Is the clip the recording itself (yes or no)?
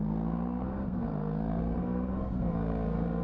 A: no